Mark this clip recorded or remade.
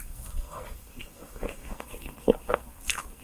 remade